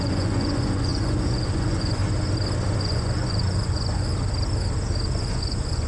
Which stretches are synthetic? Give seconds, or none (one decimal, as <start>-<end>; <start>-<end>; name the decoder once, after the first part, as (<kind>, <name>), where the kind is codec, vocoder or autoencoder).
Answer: 0.0-2.0 (vocoder, Vocos); 2.8-4.1; 5.1-5.9